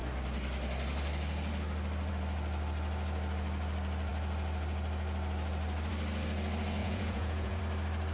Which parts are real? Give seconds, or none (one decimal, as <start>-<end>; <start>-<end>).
0.0-6.8; 7.6-8.1